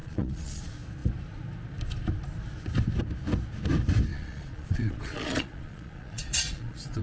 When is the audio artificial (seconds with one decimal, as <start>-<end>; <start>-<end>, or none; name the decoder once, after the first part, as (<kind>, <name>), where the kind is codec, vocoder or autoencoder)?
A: 0.0-0.6 (vocoder, Vocos); 4.1-7.0